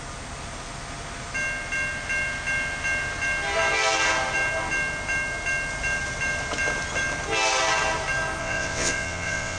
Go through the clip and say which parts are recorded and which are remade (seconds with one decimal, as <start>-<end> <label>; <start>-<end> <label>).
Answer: 0.0-8.4 recorded; 8.4-9.6 remade